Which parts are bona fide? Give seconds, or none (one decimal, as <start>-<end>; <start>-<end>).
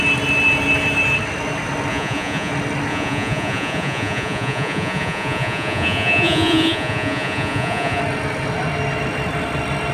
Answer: 0.0-1.9; 2.5-2.9; 8.0-9.9